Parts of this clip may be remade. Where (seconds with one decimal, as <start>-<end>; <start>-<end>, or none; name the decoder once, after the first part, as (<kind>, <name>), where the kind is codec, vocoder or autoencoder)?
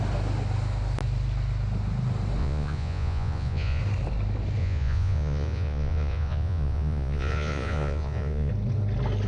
2.4-3.8 (vocoder, Vocos); 4.6-8.5